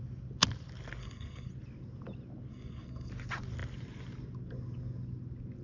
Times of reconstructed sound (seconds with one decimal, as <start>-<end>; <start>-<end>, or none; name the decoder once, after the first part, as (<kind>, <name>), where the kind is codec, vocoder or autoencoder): 1.0-1.5 (codec, SNAC); 2.5-3.1